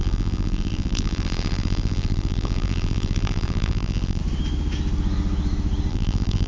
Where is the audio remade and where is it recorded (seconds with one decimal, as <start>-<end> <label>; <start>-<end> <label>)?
0.0-4.2 remade; 4.2-5.9 recorded; 5.9-6.5 remade